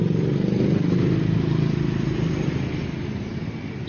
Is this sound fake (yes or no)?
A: no